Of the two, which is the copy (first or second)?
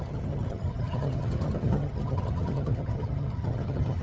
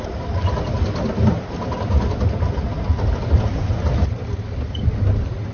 first